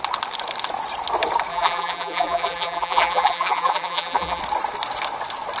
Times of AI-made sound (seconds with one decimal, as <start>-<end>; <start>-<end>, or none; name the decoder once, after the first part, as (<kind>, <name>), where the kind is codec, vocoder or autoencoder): 1.5-4.4 (vocoder, BigVGAN v2)